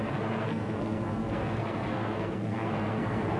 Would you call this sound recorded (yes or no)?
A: no